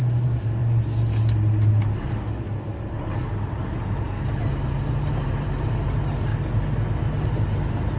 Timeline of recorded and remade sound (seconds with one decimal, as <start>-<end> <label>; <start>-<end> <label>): 0.0-0.6 remade; 0.6-4.9 recorded; 4.9-6.3 remade; 6.3-8.0 recorded